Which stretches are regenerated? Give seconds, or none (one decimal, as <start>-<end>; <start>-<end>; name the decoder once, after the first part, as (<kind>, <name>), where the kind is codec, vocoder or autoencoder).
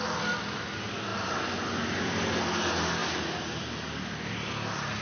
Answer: none